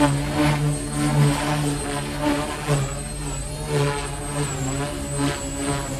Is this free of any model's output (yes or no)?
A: yes